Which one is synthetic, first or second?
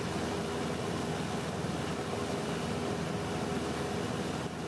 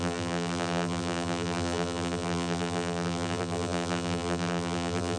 second